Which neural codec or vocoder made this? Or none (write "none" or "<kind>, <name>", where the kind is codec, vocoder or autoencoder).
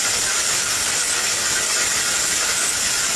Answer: none